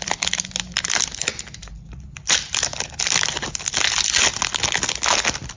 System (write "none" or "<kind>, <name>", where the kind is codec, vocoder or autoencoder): none